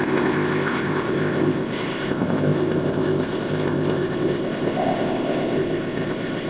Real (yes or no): no